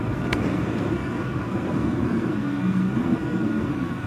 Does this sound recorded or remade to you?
remade